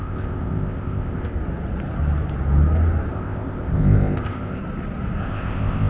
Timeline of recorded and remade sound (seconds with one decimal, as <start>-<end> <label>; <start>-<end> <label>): 0.0-1.4 remade; 1.4-3.1 recorded; 3.1-4.6 remade; 4.6-5.2 recorded; 5.2-5.9 remade